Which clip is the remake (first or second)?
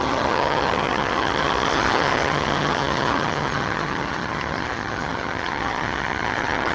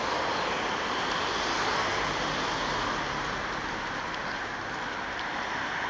first